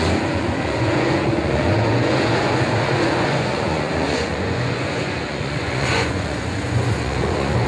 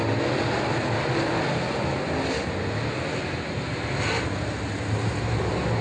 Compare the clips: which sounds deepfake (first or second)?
first